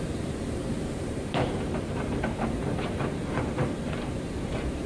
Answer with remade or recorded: remade